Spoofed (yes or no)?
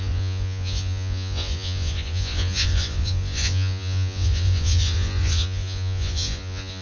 yes